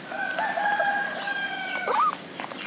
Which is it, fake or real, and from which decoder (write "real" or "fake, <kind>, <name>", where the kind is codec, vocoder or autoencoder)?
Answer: real